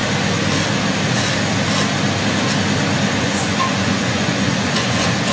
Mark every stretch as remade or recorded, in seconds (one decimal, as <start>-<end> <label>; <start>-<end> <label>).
0.0-3.2 recorded; 3.2-5.3 remade